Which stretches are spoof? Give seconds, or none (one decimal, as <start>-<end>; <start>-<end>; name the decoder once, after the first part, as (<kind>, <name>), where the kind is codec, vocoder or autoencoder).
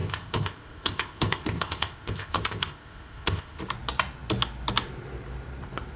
0.0-3.6 (codec, ZipCodec)